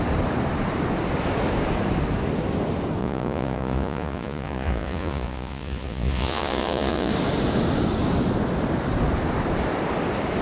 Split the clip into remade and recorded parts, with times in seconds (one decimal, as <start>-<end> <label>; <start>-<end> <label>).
0.0-3.0 recorded; 3.0-7.1 remade; 7.1-10.4 recorded

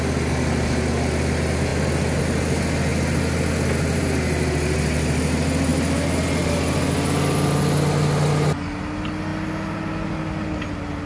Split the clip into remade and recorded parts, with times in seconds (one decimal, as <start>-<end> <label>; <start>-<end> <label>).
0.0-11.1 recorded

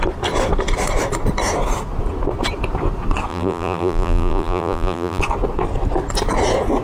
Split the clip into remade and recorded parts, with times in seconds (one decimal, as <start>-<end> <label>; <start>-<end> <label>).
0.0-3.3 recorded; 3.3-5.2 remade; 5.2-6.8 recorded

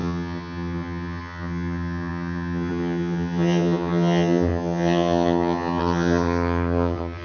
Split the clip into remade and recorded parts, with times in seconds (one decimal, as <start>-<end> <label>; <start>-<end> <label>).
0.0-7.2 remade